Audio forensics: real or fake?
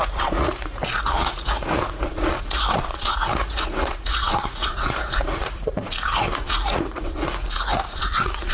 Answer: fake